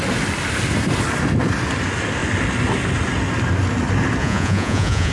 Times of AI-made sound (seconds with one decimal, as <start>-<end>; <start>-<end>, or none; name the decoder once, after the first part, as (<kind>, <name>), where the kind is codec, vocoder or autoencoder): 4.2-5.1 (vocoder, Vocos)